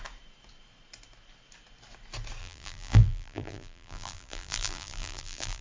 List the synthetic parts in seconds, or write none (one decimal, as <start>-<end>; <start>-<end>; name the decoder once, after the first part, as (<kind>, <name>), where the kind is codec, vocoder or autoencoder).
2.4-5.6 (vocoder, BigVGAN v2)

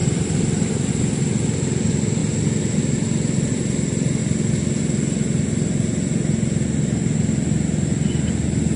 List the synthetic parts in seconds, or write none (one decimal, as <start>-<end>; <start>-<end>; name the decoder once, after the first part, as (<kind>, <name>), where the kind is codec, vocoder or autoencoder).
0.0-0.9 (vocoder, BigVGAN v2); 2.2-2.8

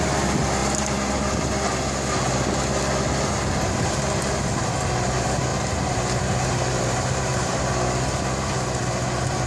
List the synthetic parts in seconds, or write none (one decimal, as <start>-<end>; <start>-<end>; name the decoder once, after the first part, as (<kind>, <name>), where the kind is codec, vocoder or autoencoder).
5.5-7.6 (vocoder, BigVGAN v2)

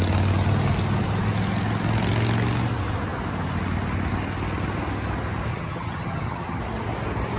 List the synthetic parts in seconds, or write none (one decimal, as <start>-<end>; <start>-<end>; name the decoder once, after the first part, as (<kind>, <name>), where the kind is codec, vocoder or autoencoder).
5.5-6.6 (vocoder, HiFi-GAN)

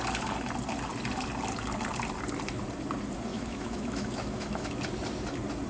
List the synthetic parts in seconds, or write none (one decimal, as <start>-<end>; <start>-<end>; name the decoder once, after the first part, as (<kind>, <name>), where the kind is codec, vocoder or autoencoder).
3.3-4.7 (autoencoder, DAC-VAE)